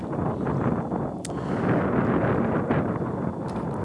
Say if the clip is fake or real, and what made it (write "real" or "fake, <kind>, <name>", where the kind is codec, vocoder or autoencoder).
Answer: real